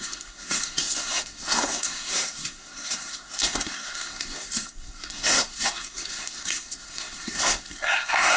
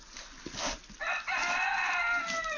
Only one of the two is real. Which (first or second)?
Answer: second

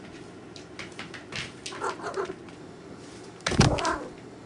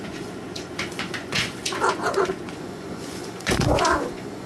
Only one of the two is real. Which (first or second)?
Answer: first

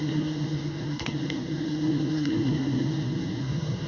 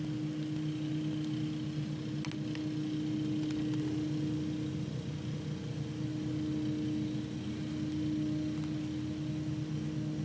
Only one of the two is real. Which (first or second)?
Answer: second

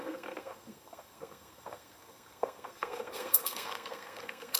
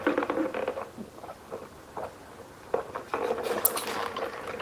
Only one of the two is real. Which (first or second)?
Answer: second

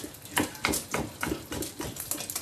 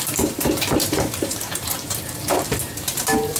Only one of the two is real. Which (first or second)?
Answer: first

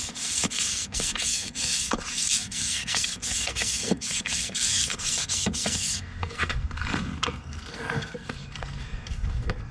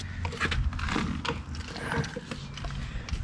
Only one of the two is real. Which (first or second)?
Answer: second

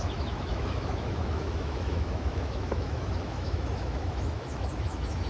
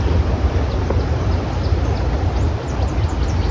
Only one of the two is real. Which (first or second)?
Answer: second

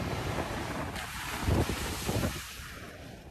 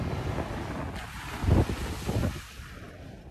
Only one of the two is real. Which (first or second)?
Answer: second